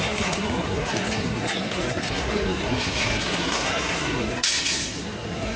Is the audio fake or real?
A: fake